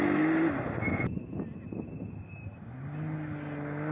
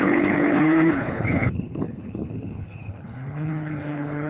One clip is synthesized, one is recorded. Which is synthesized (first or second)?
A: second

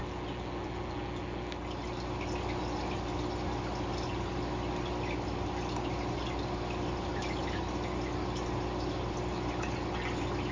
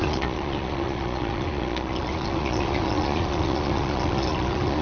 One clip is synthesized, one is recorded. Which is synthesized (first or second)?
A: second